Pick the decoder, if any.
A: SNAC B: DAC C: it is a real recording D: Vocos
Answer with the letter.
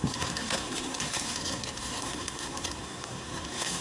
A